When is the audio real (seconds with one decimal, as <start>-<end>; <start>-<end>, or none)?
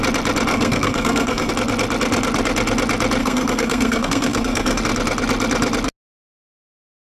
0.0-0.5; 1.5-3.2; 4.8-7.1